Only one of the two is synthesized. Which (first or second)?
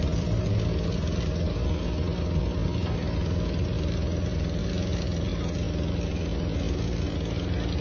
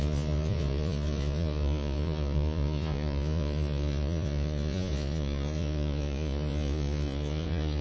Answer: second